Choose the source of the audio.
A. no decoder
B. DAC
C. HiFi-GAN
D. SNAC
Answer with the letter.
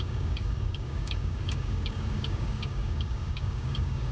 B